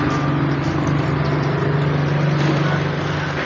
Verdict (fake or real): real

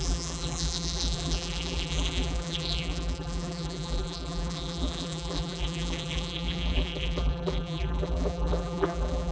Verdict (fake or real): fake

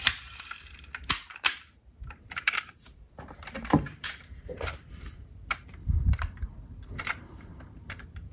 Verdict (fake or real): fake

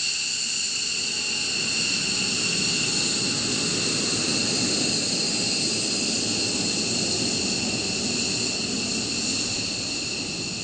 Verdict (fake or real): real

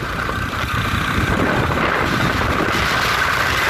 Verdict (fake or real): fake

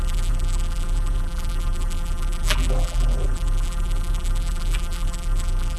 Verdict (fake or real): fake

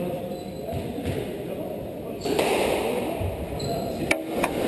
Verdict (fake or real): fake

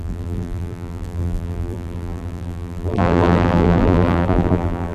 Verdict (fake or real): fake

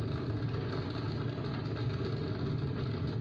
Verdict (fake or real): real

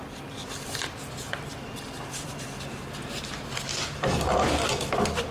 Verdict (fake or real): fake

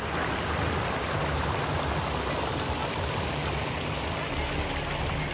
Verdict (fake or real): real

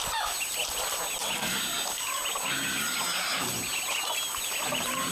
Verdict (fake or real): real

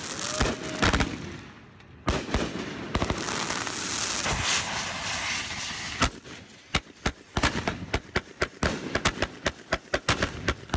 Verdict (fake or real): real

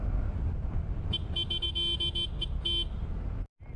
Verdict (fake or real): real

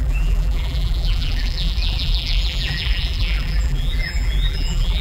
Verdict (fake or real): fake